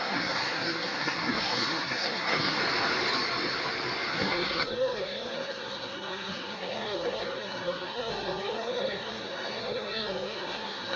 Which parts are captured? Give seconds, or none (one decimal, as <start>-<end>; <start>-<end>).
2.6-4.1

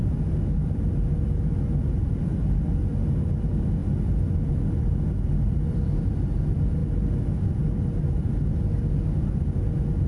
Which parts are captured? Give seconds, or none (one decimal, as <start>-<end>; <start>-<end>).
0.0-10.1

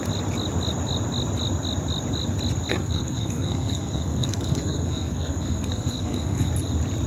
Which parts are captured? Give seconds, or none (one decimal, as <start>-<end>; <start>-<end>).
0.0-2.7; 6.5-7.1

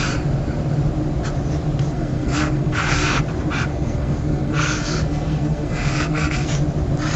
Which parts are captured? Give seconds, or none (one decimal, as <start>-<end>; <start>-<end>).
0.0-1.9; 3.2-3.7; 6.5-7.2

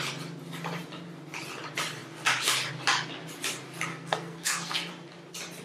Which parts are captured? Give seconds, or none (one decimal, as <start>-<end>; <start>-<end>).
0.0-3.9; 4.9-5.6